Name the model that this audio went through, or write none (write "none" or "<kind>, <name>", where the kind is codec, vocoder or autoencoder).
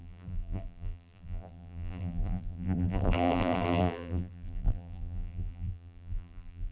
vocoder, BigVGAN v2